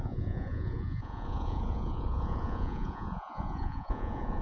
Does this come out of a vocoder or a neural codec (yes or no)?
yes